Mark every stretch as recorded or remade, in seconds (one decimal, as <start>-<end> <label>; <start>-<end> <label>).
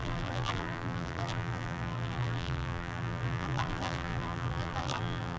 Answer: 0.0-5.4 remade